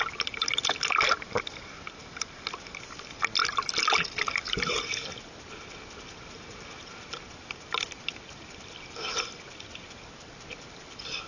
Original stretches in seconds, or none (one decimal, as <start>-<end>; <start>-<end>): 0.0-11.3